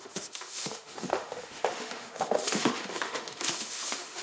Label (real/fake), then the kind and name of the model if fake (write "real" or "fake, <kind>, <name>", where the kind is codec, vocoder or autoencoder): fake, autoencoder, DAC-VAE